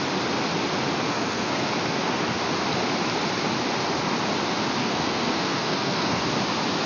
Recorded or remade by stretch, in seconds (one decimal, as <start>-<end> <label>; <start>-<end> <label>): 0.0-1.1 recorded; 1.1-1.7 remade; 1.7-4.8 recorded; 4.8-6.2 remade; 6.2-6.9 recorded